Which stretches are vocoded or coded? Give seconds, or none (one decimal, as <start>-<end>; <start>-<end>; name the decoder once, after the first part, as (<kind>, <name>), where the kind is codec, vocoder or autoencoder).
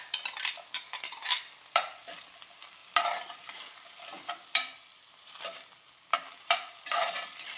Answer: 0.0-7.6 (vocoder, BigVGAN v2)